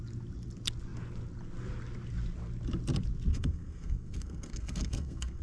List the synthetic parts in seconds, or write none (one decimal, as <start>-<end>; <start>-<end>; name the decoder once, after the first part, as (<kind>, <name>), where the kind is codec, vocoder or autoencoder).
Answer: 3.3-5.4 (codec, SNAC)